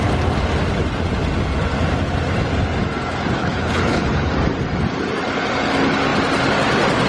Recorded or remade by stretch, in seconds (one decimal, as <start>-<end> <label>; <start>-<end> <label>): 0.0-3.4 recorded; 3.4-4.3 remade; 4.3-7.1 recorded

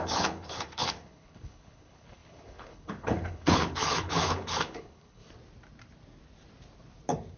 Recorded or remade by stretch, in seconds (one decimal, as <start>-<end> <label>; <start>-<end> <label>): 0.0-5.2 remade; 5.2-7.4 recorded

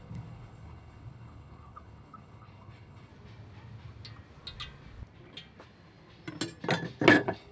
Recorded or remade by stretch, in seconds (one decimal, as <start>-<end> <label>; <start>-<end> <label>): 0.0-3.1 remade; 3.1-7.1 recorded; 7.1-7.5 remade

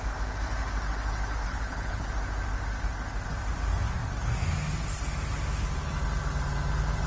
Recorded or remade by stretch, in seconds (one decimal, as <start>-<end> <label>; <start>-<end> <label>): 0.0-1.4 recorded; 1.4-2.1 remade; 2.1-7.1 recorded

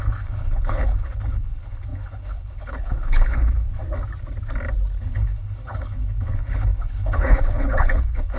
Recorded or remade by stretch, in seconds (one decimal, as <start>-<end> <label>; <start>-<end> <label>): 0.0-3.8 remade; 3.8-5.0 recorded; 5.0-8.4 remade

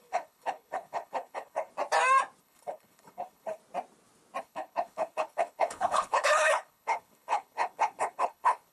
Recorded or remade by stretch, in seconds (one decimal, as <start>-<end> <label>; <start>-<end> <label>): 0.0-1.7 remade; 1.7-2.4 recorded; 2.4-3.6 remade; 3.6-4.4 recorded; 4.4-8.7 remade

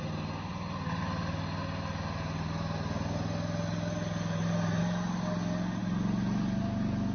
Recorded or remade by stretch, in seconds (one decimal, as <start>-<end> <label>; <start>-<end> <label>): 0.0-7.1 recorded

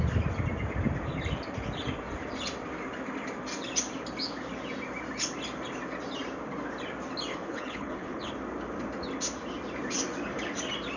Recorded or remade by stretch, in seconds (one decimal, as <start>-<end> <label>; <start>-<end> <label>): 0.0-7.3 recorded; 7.3-8.3 remade; 8.3-11.0 recorded